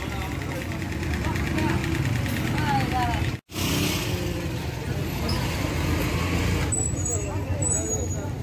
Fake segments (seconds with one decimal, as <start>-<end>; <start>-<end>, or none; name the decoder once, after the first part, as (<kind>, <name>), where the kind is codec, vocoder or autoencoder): none